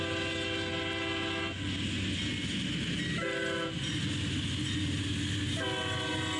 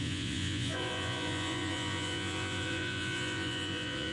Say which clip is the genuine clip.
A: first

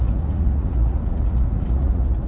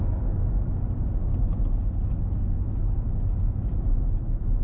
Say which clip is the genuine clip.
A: second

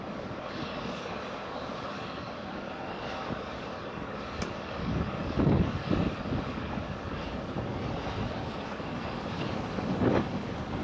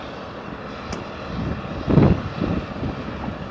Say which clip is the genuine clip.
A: second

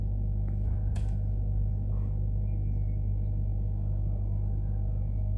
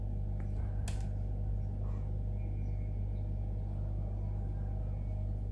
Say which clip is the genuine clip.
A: second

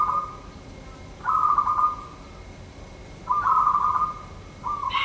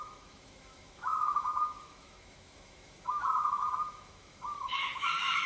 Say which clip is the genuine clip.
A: first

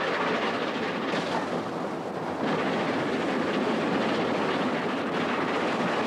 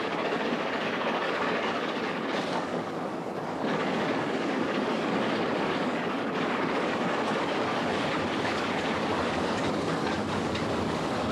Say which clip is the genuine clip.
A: first